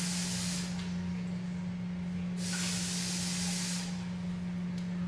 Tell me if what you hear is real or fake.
real